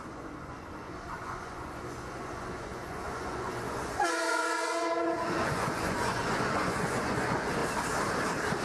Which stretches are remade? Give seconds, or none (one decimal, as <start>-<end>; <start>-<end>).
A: 0.0-7.6